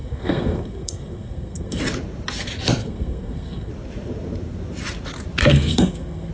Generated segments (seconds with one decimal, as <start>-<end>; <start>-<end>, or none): 0.0-1.8; 2.8-3.7; 5.5-6.3